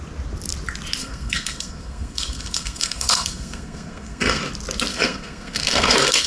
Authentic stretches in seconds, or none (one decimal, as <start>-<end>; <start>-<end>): 0.0-1.0; 4.4-4.9